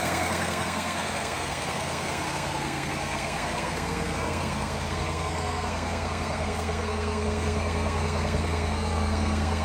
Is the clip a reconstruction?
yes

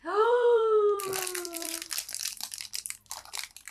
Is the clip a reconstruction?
yes